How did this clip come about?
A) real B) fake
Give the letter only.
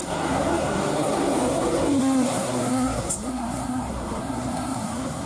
B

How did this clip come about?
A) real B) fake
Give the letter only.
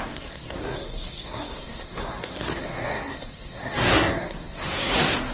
B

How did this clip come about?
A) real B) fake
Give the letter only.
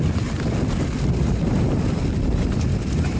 A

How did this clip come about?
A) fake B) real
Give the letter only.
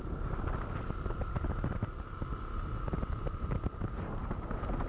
B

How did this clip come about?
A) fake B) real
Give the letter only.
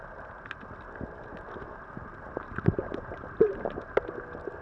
B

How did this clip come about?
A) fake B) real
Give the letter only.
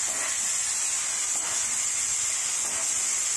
B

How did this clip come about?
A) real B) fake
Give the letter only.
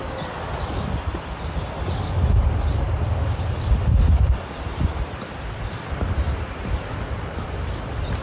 A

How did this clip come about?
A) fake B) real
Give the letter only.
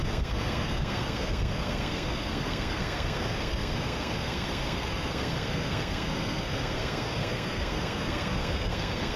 A